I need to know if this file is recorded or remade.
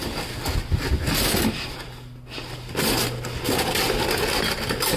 recorded